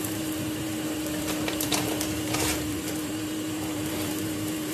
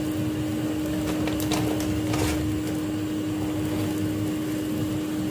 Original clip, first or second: second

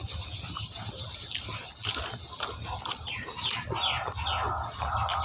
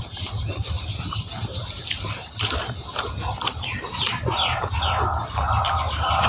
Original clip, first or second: first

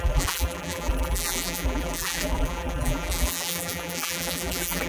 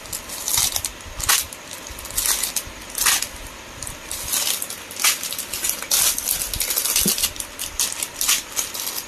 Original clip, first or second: second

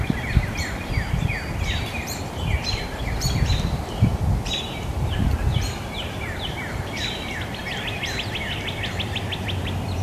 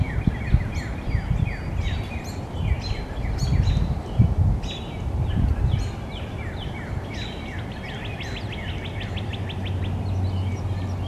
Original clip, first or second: second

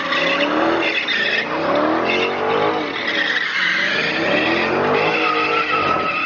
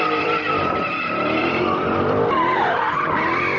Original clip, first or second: first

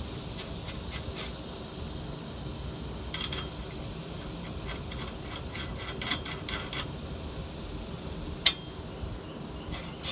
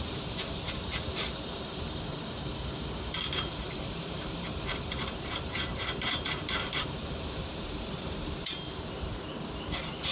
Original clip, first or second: first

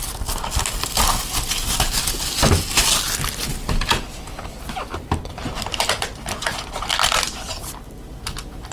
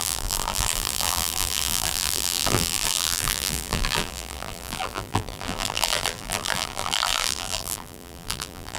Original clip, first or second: first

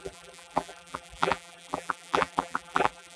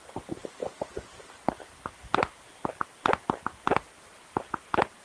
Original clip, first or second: second